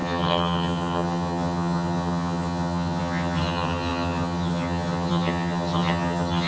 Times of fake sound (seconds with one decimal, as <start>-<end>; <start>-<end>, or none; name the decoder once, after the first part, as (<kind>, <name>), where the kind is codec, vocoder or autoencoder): 0.0-6.5 (vocoder, HiFi-GAN)